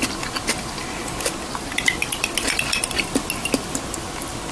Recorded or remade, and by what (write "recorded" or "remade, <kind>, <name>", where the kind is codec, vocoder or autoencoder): recorded